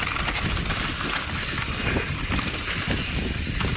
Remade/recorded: recorded